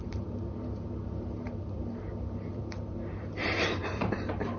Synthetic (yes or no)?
yes